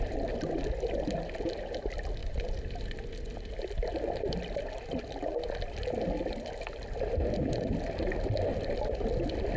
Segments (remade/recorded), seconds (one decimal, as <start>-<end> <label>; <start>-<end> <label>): 0.0-9.6 recorded